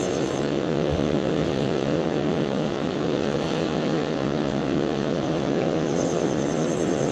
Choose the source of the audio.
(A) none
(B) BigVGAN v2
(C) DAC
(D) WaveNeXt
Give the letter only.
D